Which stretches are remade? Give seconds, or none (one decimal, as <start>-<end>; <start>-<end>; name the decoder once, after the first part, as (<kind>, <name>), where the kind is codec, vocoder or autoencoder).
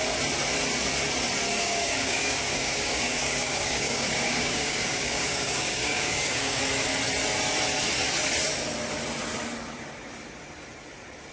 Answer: 1.6-6.6 (codec, DAC)